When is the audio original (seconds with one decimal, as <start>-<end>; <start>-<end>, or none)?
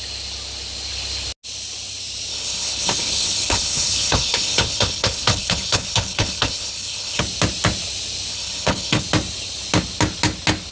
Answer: 0.0-2.3; 7.2-8.3; 9.0-10.7